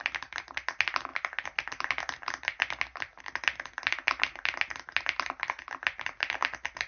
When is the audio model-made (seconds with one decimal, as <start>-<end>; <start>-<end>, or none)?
none